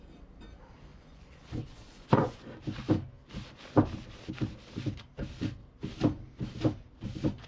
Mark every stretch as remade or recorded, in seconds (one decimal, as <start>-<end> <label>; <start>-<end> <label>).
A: 0.0-0.9 recorded; 0.9-2.5 remade; 2.5-7.5 recorded